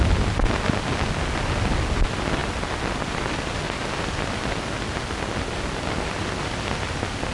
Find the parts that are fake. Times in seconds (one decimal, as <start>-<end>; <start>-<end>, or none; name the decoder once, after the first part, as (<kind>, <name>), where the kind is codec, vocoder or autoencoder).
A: none